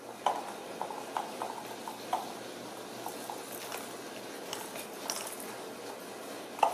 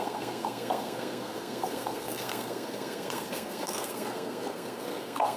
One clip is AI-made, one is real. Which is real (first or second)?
first